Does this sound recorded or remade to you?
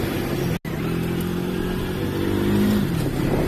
recorded